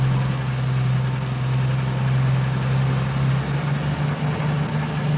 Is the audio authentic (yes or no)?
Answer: yes